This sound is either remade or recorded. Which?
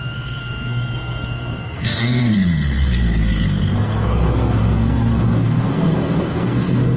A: remade